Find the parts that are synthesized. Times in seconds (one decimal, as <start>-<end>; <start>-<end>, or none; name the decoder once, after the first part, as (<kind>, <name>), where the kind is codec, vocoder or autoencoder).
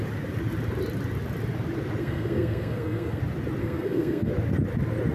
2.0-3.2 (codec, SNAC); 3.6-4.3